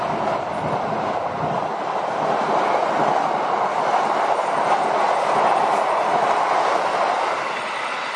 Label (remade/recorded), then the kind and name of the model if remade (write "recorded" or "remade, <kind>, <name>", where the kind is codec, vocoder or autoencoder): recorded